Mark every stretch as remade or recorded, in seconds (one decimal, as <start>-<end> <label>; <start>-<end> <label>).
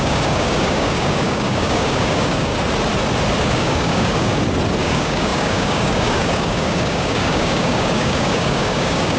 0.0-2.5 remade; 2.5-3.4 recorded; 3.4-4.3 remade; 4.3-4.8 recorded; 4.8-9.2 remade